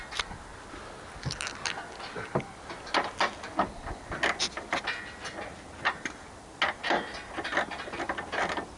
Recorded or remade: recorded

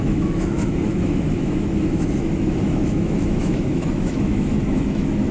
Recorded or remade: remade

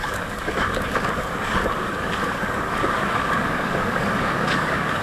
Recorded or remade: remade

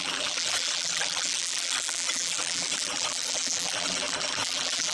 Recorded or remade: remade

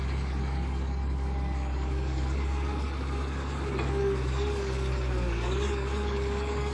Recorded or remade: remade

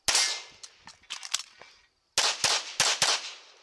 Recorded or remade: recorded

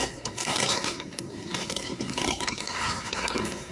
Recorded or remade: remade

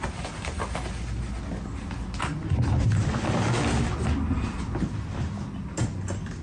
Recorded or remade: recorded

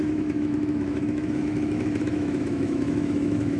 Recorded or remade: remade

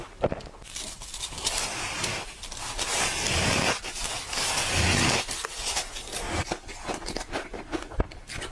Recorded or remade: recorded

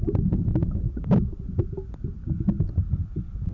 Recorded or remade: recorded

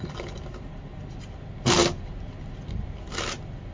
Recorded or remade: recorded